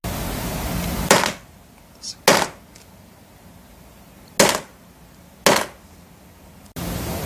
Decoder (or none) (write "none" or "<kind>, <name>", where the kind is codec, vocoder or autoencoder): none